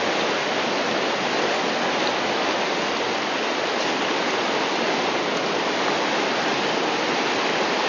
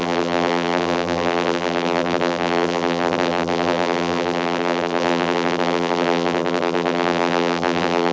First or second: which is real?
first